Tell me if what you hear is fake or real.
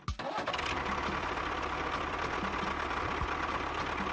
real